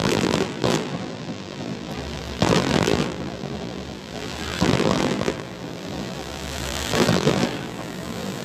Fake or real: fake